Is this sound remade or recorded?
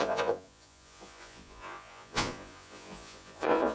remade